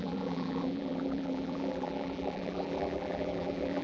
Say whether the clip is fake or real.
fake